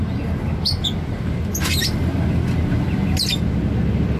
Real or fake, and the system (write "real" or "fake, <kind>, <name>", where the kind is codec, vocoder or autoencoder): real